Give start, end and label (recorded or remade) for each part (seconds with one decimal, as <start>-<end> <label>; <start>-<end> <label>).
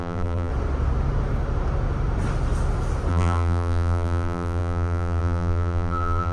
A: 0.0-0.5 remade; 0.5-3.1 recorded; 3.1-6.3 remade